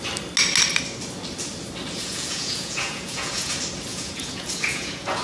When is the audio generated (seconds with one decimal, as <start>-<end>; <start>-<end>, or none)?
2.0-3.5; 3.9-5.2

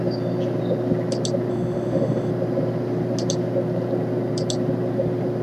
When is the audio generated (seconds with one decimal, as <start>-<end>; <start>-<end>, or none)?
1.5-2.3

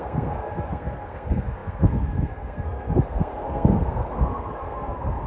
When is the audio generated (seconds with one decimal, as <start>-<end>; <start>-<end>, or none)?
0.0-5.3

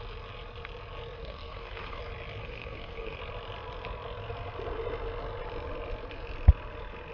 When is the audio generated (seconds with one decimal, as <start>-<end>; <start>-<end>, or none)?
1.2-2.0; 2.4-3.2

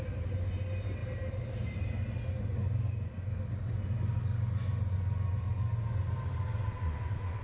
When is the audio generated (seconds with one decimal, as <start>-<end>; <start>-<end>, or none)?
6.6-7.4